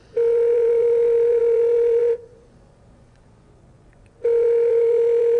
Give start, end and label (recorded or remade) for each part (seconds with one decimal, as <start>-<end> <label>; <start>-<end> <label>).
0.0-5.4 remade